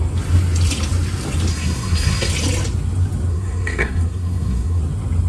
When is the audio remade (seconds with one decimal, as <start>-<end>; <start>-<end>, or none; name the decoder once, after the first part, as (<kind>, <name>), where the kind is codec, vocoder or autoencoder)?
1.5-2.3 (codec, SNAC); 3.3-4.8